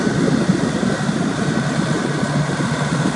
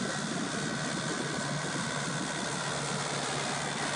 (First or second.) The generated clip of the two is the first